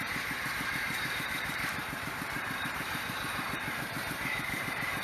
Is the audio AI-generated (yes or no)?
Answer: yes